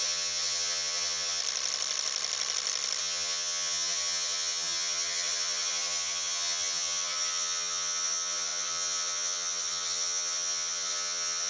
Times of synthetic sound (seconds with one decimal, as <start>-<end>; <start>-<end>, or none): 0.0-1.4; 3.0-11.5